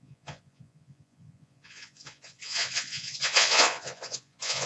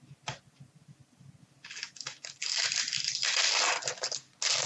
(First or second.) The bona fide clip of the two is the second